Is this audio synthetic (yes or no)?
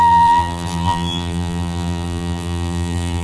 yes